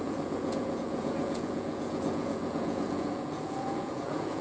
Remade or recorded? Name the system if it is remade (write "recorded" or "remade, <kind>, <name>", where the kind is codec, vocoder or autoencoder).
remade, vocoder, Vocos